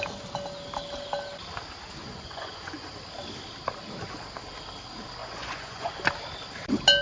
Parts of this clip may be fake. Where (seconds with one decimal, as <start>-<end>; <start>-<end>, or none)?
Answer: 2.0-2.9; 5.2-5.9